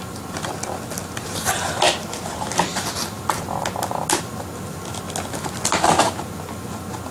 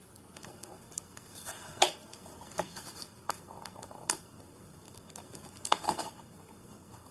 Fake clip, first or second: second